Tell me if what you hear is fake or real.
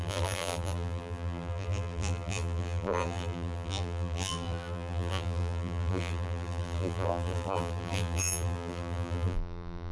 fake